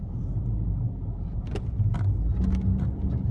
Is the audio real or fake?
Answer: real